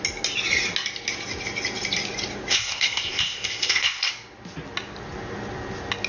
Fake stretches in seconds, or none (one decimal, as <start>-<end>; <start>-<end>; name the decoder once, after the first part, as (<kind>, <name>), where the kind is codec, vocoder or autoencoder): 2.5-4.1 (codec, ZipCodec)